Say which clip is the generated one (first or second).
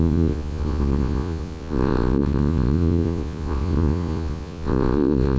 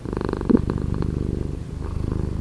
first